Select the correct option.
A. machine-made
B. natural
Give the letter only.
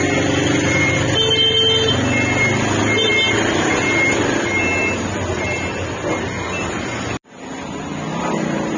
B